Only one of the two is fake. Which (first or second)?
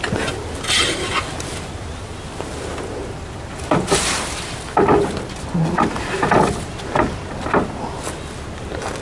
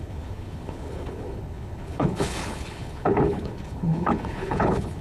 second